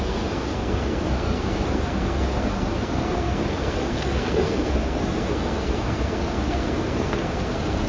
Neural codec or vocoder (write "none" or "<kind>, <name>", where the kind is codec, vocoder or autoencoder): codec, SNAC